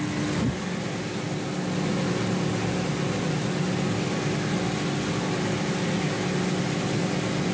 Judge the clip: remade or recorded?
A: recorded